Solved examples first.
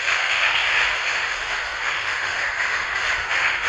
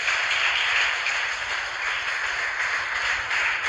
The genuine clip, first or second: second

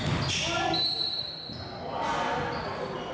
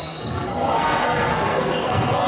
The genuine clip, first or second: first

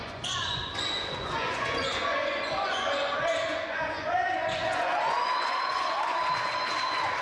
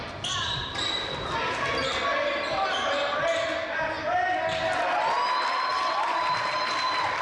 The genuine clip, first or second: second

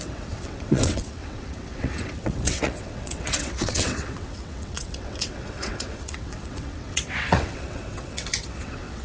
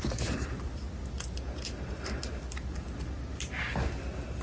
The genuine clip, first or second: second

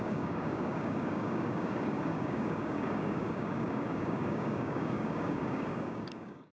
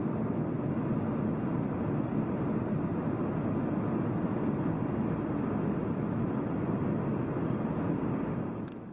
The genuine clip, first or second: second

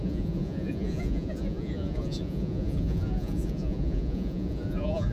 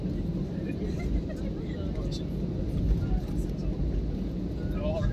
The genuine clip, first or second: second